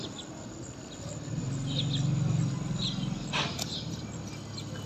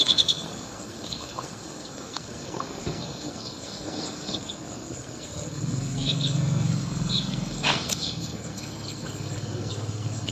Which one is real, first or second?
first